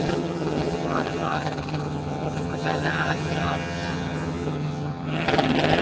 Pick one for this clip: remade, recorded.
remade